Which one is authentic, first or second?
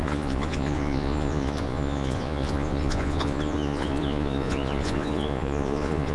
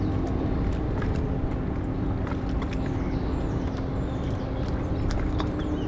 second